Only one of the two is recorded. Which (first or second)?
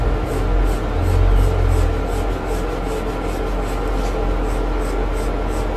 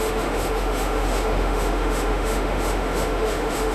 first